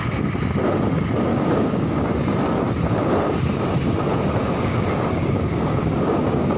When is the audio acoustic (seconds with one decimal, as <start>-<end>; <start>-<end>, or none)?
0.0-1.3; 2.1-4.4